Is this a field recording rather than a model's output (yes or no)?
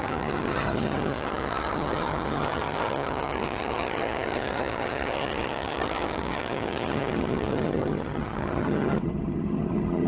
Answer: no